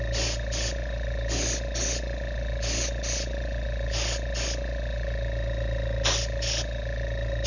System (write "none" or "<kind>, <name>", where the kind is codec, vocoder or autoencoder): none